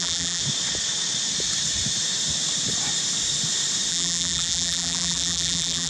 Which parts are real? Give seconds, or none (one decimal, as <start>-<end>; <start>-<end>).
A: 0.4-3.9